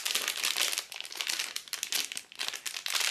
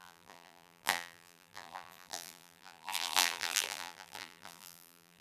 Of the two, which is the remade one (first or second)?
second